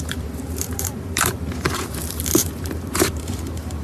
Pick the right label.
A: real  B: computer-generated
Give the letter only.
B